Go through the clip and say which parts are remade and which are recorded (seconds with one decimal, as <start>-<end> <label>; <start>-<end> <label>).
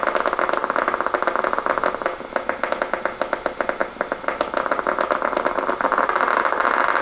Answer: 0.0-7.0 recorded